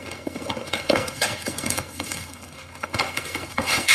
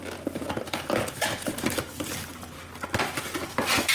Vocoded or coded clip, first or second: first